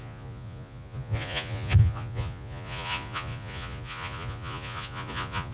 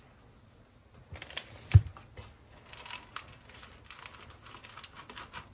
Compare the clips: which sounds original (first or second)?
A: second